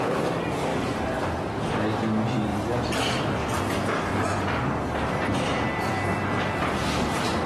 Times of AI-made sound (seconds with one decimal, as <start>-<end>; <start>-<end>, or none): 0.7-1.6